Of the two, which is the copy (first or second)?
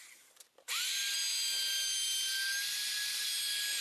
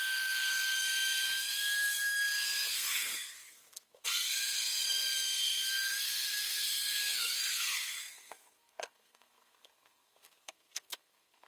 second